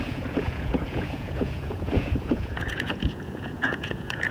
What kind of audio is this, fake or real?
fake